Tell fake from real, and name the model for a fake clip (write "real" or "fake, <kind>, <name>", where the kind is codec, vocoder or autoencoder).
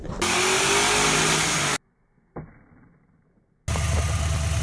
real